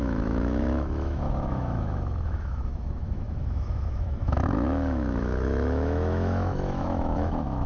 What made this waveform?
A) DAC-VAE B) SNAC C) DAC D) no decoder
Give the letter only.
A